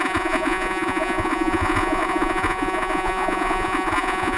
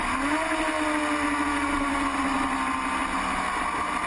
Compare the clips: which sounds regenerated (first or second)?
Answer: first